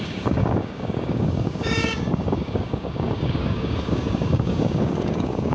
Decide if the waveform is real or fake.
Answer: fake